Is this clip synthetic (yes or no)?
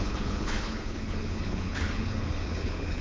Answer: yes